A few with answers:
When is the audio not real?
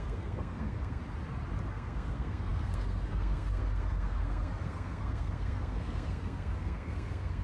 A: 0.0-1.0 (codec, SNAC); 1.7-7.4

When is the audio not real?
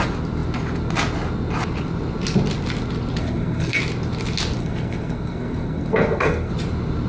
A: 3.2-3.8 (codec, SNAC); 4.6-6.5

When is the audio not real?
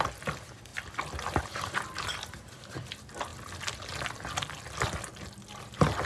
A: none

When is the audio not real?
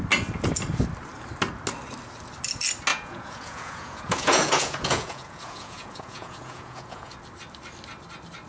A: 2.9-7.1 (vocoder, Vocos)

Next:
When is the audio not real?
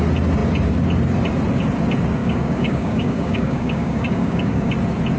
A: 2.2-4.7 (codec, DAC)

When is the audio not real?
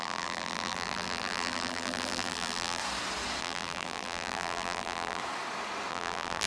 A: 0.0-2.8 (vocoder, BigVGAN v2); 3.4-5.2; 5.9-6.5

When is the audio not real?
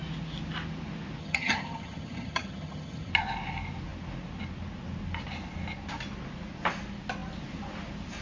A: 1.2-3.1 (vocoder, HiFi-GAN)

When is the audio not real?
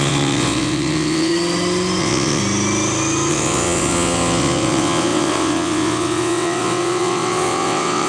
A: 0.0-1.3 (vocoder, WaveNeXt); 2.0-2.4; 3.3-8.1